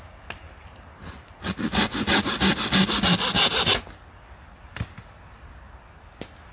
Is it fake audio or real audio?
real